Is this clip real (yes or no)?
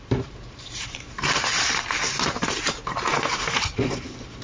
no